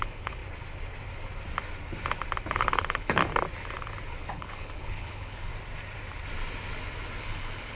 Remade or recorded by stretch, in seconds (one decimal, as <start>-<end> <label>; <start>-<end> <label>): 0.0-0.4 remade; 0.4-2.5 recorded; 2.5-3.2 remade; 3.2-4.2 recorded; 4.2-5.5 remade; 5.5-7.2 recorded; 7.2-7.8 remade